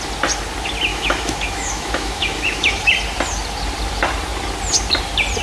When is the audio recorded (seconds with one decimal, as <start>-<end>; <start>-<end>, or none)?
0.0-0.9; 2.9-5.4